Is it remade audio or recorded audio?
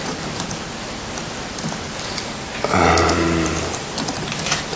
recorded